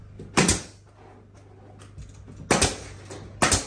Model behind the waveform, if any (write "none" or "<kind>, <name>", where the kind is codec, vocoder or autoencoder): none